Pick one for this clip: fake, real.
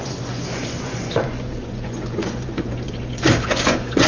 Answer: fake